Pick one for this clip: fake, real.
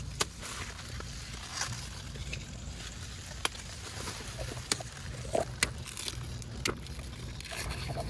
real